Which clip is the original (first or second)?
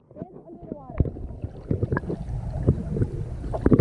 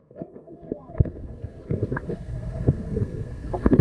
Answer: first